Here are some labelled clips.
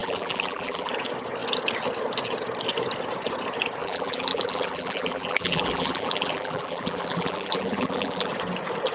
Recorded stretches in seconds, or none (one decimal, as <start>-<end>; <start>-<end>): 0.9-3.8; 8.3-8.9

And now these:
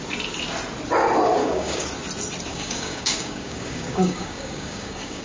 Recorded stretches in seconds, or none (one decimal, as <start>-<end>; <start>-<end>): 0.0-1.4; 1.9-2.5

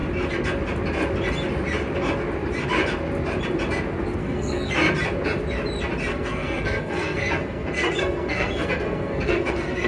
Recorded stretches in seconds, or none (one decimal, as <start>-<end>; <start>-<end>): 0.0-4.2; 4.7-6.1